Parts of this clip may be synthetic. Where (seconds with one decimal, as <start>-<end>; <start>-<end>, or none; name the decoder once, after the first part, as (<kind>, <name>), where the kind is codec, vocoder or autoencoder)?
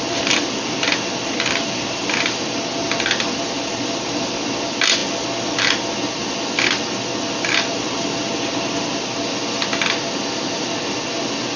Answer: none